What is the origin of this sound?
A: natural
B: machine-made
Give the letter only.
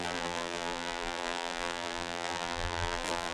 B